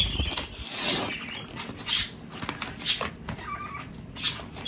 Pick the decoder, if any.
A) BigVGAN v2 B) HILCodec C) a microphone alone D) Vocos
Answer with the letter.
C